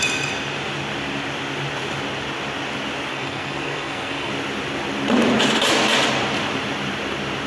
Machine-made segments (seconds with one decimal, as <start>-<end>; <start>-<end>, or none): 3.1-4.3